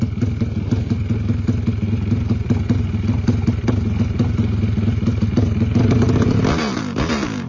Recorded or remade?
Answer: recorded